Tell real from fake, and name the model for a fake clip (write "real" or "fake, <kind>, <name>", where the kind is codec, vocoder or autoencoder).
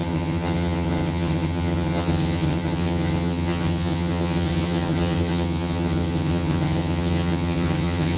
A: fake, vocoder, HiFi-GAN